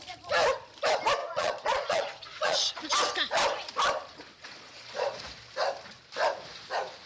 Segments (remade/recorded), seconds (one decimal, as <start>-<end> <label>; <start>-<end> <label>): 0.0-1.2 recorded; 1.2-2.9 remade; 2.9-4.3 recorded; 4.3-5.2 remade; 5.2-7.1 recorded